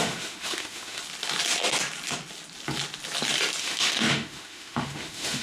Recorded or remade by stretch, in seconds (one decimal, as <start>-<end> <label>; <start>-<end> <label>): 0.0-1.0 remade; 1.0-3.6 recorded; 3.6-5.4 remade